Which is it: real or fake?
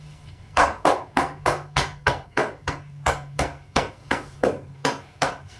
fake